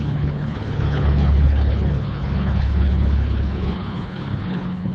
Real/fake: fake